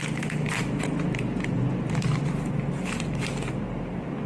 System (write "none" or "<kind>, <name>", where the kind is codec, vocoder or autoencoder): none